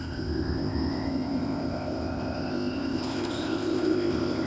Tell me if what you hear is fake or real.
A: fake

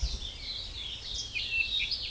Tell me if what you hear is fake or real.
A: real